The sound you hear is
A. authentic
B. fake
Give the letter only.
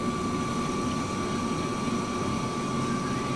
A